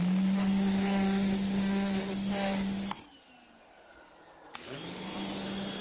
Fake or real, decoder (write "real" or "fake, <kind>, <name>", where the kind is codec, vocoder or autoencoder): real